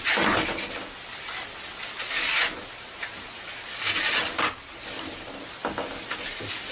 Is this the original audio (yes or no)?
yes